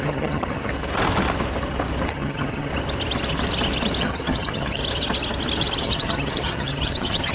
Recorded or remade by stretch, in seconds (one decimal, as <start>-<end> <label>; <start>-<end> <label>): 0.0-0.7 remade; 0.7-2.1 recorded; 2.1-2.7 remade; 2.7-4.0 recorded; 4.0-4.8 remade; 4.8-5.8 recorded; 5.8-7.3 remade